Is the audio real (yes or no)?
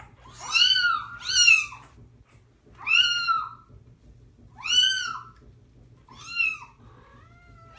yes